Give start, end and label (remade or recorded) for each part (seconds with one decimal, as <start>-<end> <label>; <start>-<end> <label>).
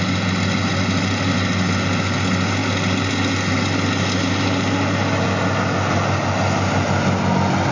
0.0-7.7 recorded